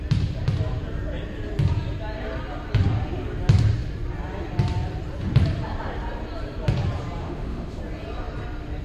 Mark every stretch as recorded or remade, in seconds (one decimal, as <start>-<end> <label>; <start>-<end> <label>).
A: 0.0-7.2 recorded; 7.2-7.8 remade; 7.8-8.8 recorded